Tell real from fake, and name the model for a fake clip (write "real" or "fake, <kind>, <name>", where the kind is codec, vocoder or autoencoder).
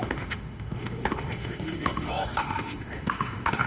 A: fake, autoencoder, DAC-VAE